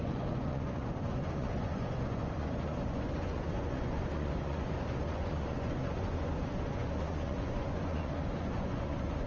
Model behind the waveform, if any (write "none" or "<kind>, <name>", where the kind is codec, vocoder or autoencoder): vocoder, Vocos